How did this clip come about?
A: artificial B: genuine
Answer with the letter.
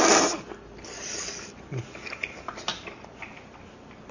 B